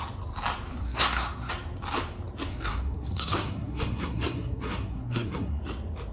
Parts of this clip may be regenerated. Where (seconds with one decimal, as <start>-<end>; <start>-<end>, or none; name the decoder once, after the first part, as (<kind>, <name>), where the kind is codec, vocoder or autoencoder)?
0.7-1.5 (codec, SNAC); 2.5-5.6